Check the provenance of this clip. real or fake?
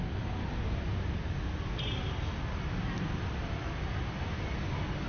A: real